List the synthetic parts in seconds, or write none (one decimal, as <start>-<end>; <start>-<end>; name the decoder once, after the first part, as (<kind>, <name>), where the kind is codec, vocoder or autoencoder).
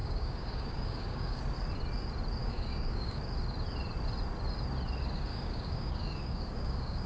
0.0-1.4 (codec, DAC); 2.4-3.2; 5.3-7.1